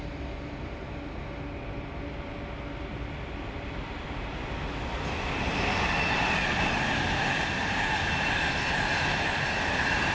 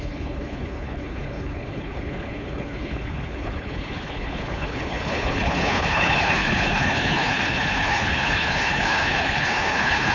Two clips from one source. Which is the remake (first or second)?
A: second